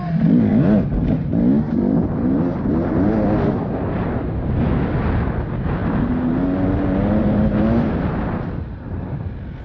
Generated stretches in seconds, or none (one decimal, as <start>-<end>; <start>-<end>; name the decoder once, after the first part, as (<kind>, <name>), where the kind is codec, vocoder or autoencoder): none

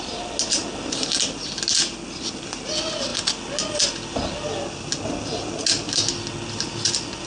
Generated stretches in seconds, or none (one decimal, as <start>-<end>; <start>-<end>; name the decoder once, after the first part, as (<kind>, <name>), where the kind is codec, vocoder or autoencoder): none

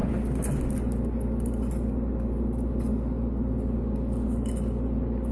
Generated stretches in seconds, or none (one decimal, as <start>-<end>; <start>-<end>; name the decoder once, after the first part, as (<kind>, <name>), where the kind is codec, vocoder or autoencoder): none

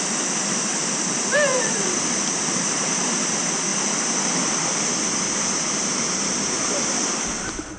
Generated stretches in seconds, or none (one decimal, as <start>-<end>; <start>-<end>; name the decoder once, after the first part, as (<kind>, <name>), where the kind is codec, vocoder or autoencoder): 1.5-2.9 (vocoder, BigVGAN v2)

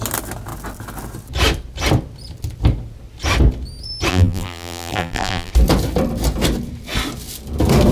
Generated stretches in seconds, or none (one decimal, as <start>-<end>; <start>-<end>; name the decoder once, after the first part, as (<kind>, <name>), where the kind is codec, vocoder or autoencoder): 4.1-5.5 (vocoder, BigVGAN v2)

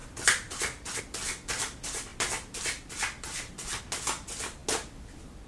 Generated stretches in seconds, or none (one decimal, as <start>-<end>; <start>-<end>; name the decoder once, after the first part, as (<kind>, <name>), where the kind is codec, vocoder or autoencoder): 0.0-1.0 (vocoder, BigVGAN v2); 2.1-3.8

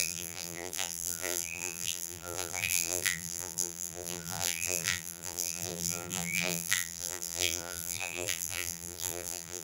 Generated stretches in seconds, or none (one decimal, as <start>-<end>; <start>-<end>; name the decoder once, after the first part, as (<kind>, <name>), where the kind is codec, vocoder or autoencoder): 0.0-9.6 (vocoder, BigVGAN v2)